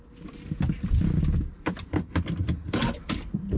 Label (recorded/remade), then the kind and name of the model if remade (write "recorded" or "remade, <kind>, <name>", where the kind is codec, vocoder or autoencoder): recorded